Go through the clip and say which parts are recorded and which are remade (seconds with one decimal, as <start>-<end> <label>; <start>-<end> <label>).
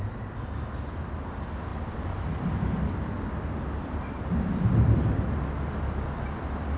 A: 0.0-6.8 recorded